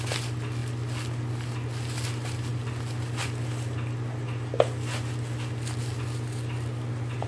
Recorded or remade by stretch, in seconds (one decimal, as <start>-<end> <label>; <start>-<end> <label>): 0.0-7.3 recorded